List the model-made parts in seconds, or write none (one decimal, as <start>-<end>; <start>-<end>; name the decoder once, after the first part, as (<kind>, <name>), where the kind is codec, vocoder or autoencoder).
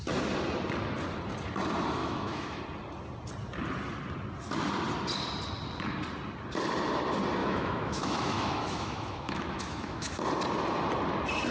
2.0-2.6 (autoencoder, DAC-VAE); 7.4-10.2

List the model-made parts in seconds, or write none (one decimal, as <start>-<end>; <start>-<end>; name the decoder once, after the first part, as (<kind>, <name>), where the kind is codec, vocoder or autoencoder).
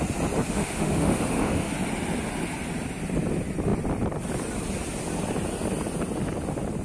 0.5-1.7 (autoencoder, DAC-VAE)